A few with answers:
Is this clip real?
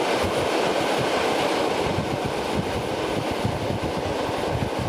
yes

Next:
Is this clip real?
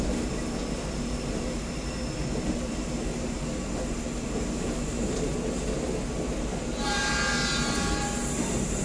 yes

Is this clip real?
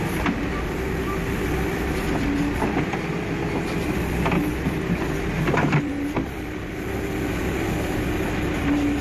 no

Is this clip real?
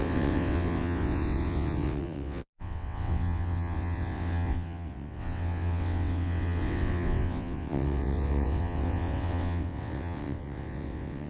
no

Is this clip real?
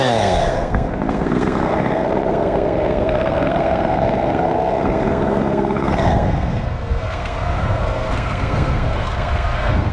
no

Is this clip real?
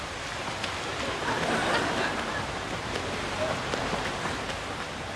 yes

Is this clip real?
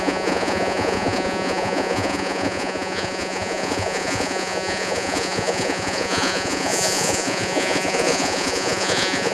no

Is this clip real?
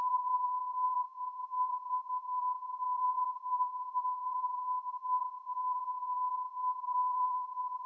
no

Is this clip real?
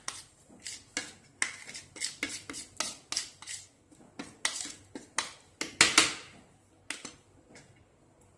yes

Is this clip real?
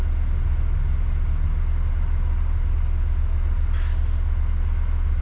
yes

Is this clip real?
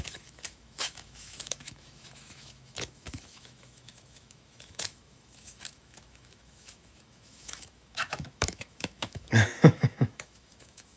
no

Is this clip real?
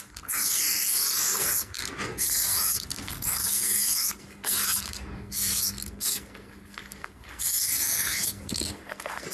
no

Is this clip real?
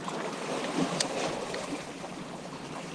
yes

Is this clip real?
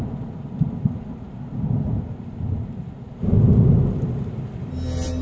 yes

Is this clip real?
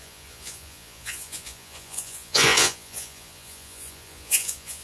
no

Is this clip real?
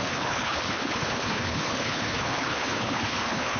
no